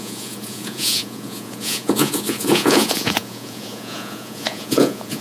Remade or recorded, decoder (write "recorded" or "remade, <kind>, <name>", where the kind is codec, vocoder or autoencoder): remade, vocoder, Vocos